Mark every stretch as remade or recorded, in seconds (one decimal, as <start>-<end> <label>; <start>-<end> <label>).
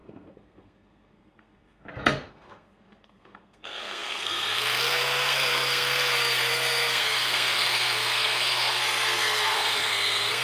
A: 0.0-10.4 remade